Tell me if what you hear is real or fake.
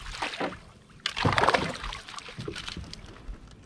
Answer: real